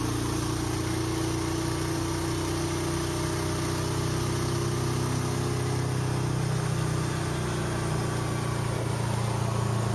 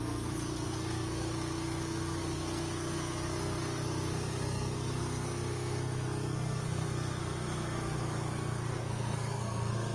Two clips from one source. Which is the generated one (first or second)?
second